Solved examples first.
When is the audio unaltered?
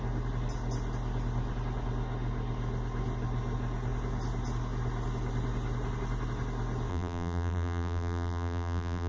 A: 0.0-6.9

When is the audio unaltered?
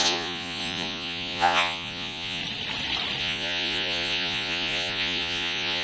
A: 2.4-3.2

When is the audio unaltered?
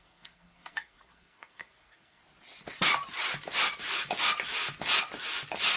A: 2.2-5.8